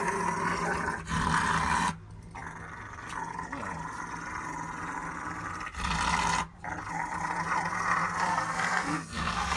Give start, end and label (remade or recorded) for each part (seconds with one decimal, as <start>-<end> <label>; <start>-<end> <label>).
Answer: 0.0-8.3 recorded; 8.3-9.6 remade